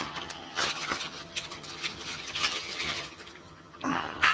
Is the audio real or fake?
fake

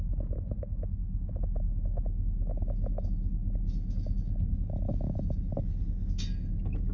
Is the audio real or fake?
real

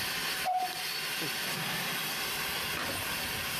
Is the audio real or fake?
real